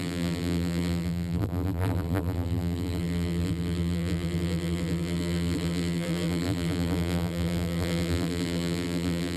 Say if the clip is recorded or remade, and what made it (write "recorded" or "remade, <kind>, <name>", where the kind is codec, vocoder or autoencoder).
remade, vocoder, BigVGAN v2